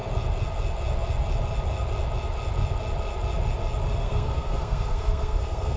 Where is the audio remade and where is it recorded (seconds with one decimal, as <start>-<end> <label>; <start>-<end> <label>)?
0.0-4.0 recorded; 4.0-5.8 remade